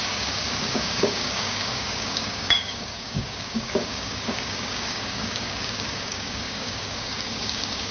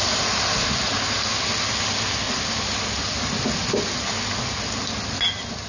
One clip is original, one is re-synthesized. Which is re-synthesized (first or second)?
first